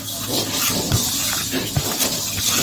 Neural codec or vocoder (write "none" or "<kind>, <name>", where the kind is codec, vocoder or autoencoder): none